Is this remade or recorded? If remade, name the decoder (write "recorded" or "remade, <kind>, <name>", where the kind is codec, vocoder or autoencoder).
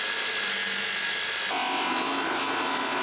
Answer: recorded